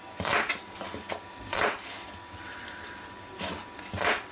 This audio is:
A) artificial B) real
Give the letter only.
A